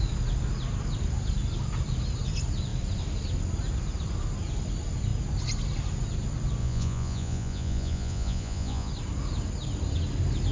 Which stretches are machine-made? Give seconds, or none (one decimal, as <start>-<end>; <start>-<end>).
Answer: 6.6-8.9